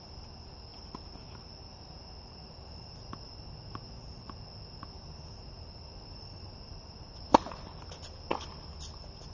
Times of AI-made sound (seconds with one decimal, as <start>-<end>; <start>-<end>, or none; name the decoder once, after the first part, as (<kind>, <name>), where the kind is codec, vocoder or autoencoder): none